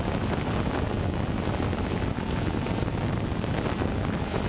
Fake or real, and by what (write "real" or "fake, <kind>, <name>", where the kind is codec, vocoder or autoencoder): real